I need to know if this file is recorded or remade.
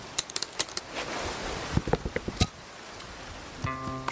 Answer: recorded